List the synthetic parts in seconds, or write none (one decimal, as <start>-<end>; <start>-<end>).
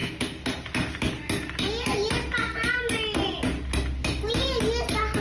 none